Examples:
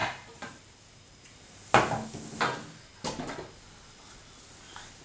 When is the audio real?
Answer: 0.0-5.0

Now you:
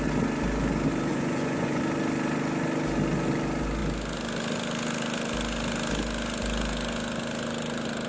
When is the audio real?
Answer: 0.0-1.1; 1.8-8.1

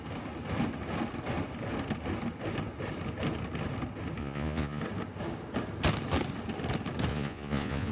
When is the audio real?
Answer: 0.0-4.2; 4.8-7.1

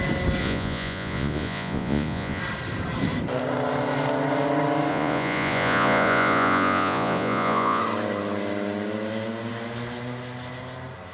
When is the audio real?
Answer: 0.0-0.4; 2.4-4.9; 7.8-11.1